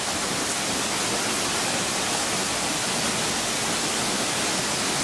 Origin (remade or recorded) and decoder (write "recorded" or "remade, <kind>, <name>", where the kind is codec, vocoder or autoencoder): recorded